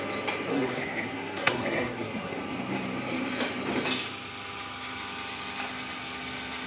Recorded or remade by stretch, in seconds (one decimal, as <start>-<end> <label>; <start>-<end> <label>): 0.0-0.5 recorded; 0.5-2.4 remade; 2.4-6.7 recorded